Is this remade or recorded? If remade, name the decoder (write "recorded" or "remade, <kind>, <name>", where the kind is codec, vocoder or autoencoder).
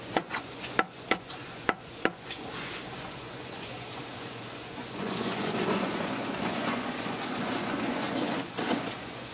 remade, vocoder, Vocos